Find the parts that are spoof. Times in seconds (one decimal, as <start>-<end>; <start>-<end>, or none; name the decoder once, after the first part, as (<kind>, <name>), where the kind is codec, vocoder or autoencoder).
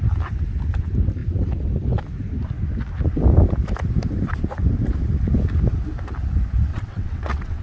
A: 6.7-7.6 (vocoder, WaveNeXt)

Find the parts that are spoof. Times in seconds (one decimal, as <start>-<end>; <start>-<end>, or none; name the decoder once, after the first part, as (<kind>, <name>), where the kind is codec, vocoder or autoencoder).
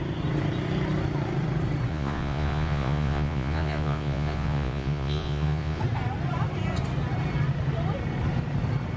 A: 1.9-5.8 (vocoder, Vocos)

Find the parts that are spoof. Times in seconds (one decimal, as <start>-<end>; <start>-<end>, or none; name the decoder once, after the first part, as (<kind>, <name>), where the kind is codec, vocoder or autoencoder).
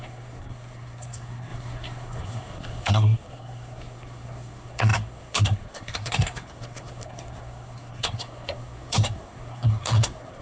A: 0.0-10.4 (codec, SNAC)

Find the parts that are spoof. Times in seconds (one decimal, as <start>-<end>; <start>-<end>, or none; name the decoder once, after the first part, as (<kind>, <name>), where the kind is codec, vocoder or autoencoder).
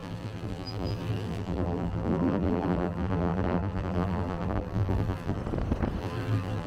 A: 0.0-5.4 (vocoder, BigVGAN v2); 6.0-6.7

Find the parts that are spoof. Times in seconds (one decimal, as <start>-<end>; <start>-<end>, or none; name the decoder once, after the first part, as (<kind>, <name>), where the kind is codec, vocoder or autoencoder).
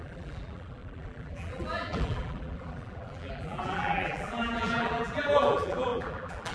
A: 0.0-6.5 (vocoder, BigVGAN v2)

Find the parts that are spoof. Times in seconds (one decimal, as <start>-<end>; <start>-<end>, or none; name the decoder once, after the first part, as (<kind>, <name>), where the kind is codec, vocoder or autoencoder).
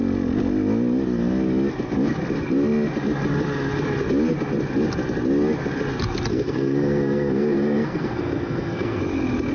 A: 6.3-9.0 (codec, SNAC)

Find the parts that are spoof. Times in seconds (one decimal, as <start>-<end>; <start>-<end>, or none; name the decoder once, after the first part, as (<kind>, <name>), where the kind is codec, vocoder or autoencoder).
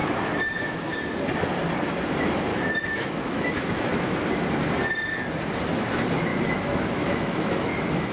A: 0.0-0.9 (autoencoder, DAC-VAE); 2.5-4.2; 6.3-8.1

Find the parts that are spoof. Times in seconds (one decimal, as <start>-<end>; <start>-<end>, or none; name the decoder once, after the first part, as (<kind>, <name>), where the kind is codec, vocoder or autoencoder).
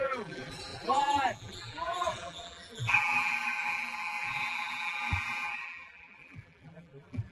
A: 0.0-7.3 (vocoder, BigVGAN v2)